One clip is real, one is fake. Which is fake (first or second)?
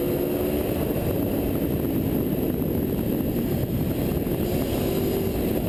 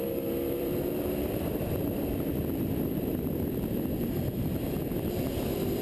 second